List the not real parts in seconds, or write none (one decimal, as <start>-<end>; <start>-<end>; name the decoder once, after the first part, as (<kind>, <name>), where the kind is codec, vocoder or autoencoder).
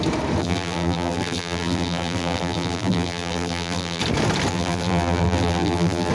0.4-4.0 (vocoder, BigVGAN v2); 4.5-6.1